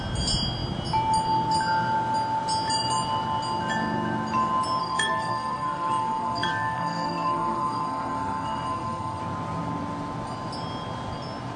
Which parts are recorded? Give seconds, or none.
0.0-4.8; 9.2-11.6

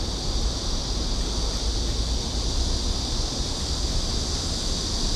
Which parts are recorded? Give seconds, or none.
0.0-5.2

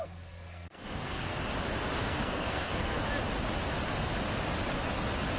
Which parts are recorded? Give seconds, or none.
1.3-2.0; 3.0-5.4

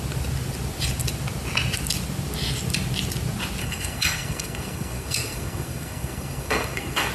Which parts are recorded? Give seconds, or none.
0.0-3.6

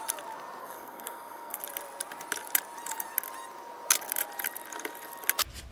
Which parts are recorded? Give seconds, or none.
0.0-0.6; 1.6-5.7

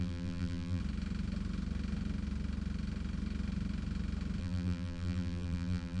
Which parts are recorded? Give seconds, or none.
0.8-4.4